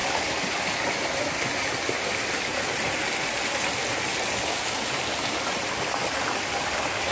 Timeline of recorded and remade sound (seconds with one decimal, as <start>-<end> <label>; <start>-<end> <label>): 0.0-7.1 recorded